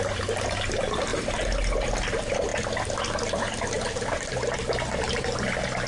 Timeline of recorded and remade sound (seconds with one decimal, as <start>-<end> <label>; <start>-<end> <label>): 0.0-5.9 recorded